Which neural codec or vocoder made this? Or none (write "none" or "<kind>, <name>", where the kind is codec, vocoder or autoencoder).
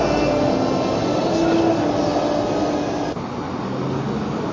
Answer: none